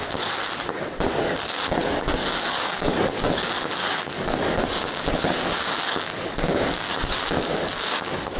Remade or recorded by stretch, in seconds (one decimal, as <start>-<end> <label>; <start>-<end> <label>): 0.0-0.4 remade; 0.4-1.1 recorded; 1.1-8.4 remade